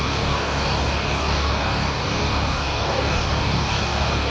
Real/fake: fake